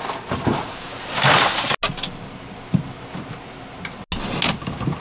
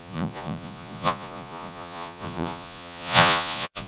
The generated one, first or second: second